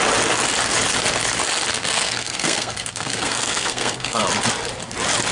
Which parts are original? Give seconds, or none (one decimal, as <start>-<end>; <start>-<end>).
0.0-1.7; 4.2-5.3